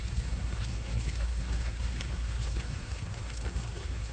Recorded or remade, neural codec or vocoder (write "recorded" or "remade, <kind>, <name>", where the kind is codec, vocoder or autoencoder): remade, codec, SNAC